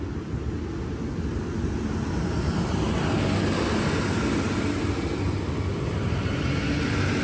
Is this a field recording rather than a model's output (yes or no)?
yes